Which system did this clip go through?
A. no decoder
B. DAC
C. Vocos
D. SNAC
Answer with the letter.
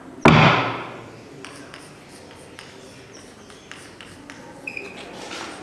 A